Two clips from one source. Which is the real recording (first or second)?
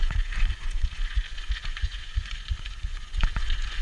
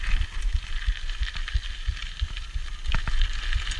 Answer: second